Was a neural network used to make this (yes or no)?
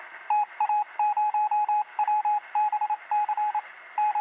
yes